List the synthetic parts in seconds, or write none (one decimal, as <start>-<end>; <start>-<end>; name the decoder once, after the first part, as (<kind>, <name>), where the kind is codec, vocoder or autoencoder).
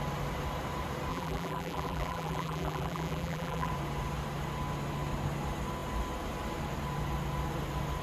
1.1-3.7 (vocoder, BigVGAN v2)